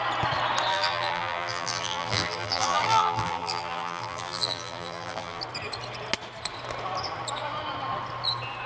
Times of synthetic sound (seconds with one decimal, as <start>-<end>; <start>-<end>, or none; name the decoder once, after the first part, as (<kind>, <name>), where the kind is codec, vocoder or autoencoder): 0.7-5.4 (vocoder, BigVGAN v2)